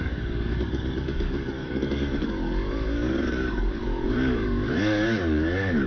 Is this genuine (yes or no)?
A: no